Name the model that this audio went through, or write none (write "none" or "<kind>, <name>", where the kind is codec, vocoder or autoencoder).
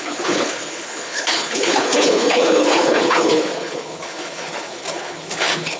codec, HILCodec